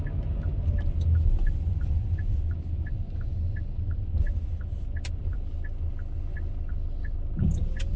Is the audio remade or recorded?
recorded